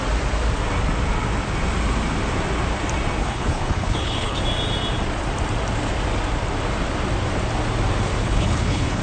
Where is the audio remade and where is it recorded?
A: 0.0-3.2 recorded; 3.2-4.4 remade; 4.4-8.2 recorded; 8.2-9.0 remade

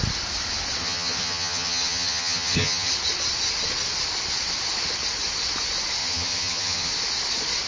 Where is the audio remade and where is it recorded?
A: 0.0-0.8 recorded; 0.8-2.9 remade; 2.9-6.0 recorded; 6.0-6.9 remade; 6.9-7.7 recorded

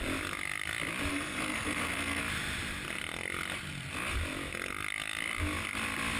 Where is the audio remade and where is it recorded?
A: 0.0-1.1 recorded; 1.1-2.2 remade; 2.2-6.2 recorded